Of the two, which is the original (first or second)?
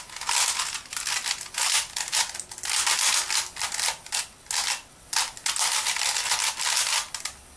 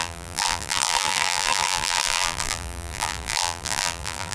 first